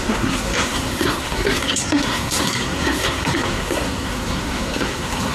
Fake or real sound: fake